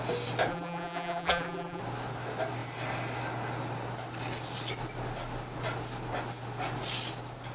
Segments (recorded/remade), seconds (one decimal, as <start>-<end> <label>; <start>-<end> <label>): 0.0-0.5 recorded; 0.5-1.8 remade; 1.8-7.5 recorded